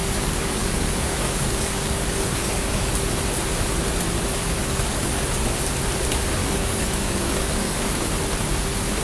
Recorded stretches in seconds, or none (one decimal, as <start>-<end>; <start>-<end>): 2.9-4.6; 5.2-6.4; 8.1-9.0